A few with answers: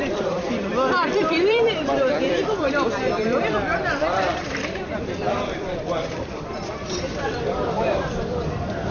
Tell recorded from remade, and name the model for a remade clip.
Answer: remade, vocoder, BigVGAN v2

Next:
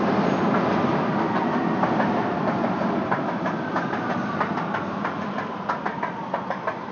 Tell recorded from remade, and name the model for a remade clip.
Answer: recorded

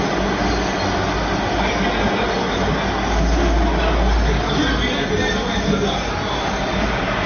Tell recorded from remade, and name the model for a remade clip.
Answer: recorded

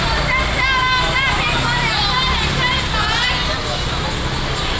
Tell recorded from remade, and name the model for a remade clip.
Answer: recorded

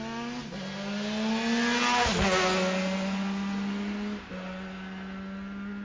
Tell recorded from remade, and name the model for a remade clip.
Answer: recorded